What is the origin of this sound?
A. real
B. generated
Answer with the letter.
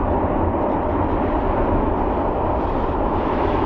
A